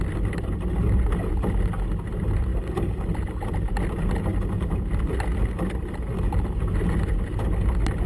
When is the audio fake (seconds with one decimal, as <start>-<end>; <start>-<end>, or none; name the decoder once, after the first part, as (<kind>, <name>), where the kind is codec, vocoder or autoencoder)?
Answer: 2.5-3.5 (vocoder, BigVGAN v2)